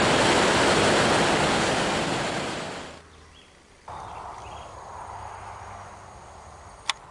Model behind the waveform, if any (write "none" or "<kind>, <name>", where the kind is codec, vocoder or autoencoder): none